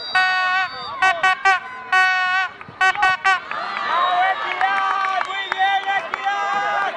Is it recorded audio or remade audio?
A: recorded